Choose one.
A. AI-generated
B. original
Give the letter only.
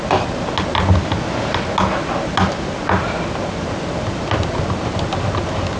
B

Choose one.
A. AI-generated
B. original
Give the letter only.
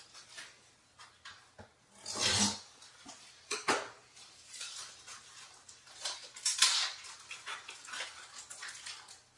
B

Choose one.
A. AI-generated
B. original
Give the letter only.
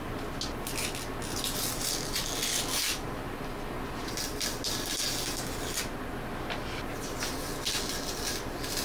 B